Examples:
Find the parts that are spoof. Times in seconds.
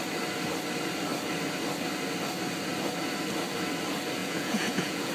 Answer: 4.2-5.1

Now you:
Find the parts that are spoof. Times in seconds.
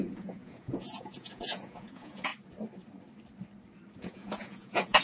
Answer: 0.0-2.3; 4.0-5.0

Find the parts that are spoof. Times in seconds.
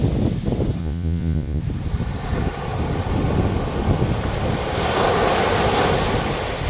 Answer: 0.8-1.6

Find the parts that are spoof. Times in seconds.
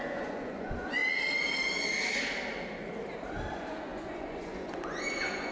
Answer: 0.0-1.0; 3.5-5.5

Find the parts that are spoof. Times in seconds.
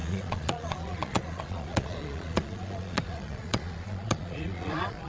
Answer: 0.0-5.1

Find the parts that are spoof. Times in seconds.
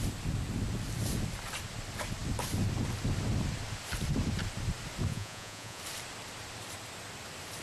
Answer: 5.1-5.8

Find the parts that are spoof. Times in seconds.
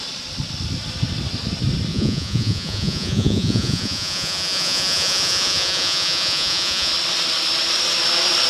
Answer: 1.9-6.9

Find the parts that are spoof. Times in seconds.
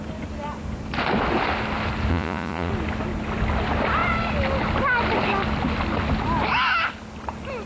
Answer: 2.1-2.7